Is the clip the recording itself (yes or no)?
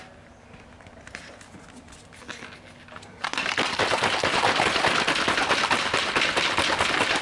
yes